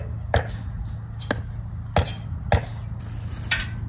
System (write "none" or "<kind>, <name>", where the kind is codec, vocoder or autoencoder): none